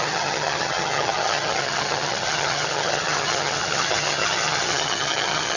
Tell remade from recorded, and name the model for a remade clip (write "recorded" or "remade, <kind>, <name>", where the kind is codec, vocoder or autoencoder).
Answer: remade, vocoder, HiFi-GAN